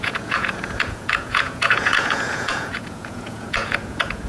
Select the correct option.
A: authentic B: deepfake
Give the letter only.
B